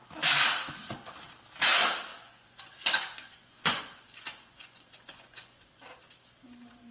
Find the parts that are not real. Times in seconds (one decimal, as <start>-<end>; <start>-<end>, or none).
2.1-5.7

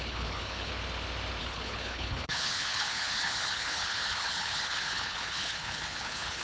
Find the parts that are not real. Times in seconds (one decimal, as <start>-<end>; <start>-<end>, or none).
0.0-0.7; 1.4-6.4